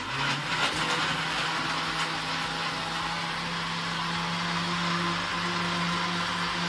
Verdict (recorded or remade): recorded